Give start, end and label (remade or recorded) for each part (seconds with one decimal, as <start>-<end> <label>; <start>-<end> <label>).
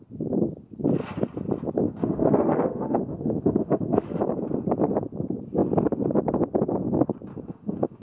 0.0-2.0 recorded; 2.0-4.2 remade; 4.2-7.3 recorded; 7.3-8.0 remade